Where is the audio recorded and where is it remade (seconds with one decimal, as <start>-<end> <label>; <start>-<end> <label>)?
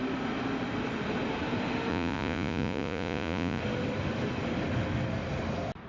0.0-1.9 recorded; 1.9-3.6 remade; 3.6-5.9 recorded